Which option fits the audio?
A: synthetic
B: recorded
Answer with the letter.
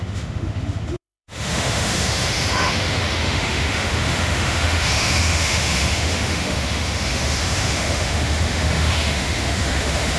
A